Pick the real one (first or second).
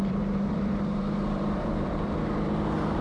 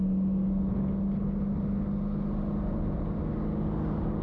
second